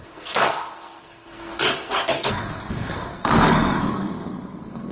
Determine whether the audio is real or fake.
fake